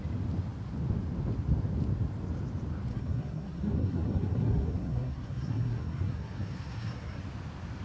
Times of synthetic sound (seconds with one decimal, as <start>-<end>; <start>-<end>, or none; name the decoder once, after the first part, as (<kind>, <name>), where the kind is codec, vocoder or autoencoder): 2.9-7.2 (codec, SNAC)